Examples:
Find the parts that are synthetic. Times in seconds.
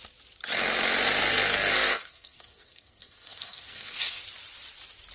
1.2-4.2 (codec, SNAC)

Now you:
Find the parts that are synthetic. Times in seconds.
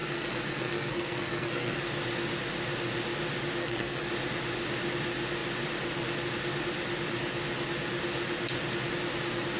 0.0-1.8 (codec, SNAC); 3.6-4.1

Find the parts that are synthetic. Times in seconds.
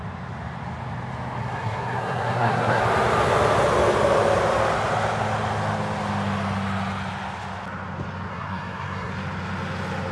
1.4-2.8 (codec, SNAC); 8.3-9.1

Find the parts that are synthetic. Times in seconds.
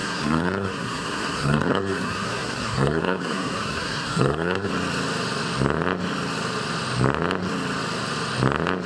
0.0-4.7 (codec, SNAC)